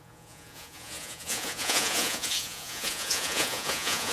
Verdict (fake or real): fake